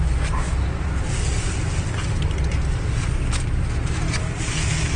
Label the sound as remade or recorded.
recorded